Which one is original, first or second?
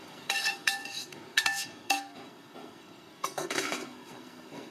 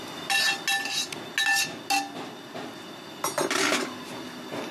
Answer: second